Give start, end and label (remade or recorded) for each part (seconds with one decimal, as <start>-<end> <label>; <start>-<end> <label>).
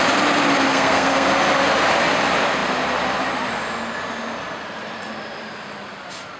0.0-0.7 recorded; 0.7-1.3 remade; 1.3-6.4 recorded